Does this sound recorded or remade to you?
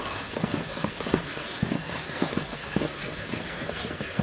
remade